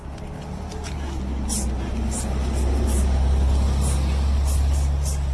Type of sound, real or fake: real